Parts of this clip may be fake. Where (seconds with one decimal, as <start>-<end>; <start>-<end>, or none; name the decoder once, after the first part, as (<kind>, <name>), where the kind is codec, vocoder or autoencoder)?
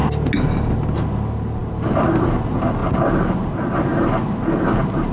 none